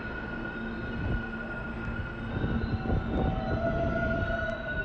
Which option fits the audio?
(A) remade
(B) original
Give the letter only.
B